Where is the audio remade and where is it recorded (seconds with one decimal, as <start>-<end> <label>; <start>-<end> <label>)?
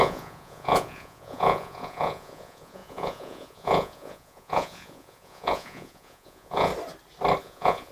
0.0-6.7 remade; 6.7-7.4 recorded; 7.4-7.9 remade